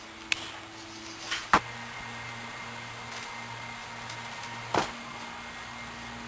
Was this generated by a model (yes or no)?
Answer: no